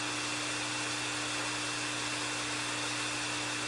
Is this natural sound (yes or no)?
yes